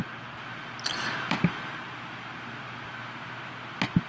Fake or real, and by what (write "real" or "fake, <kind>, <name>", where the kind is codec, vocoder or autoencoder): real